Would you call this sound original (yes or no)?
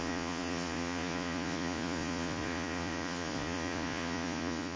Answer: no